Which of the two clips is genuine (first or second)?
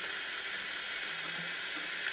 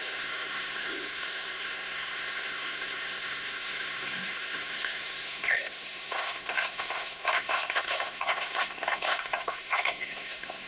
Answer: first